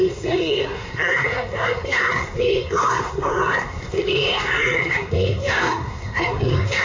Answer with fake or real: fake